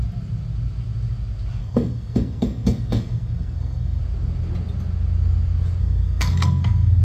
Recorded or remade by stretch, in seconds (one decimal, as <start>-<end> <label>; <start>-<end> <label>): 0.0-1.6 recorded; 1.6-4.0 remade; 4.0-5.8 recorded; 5.8-7.0 remade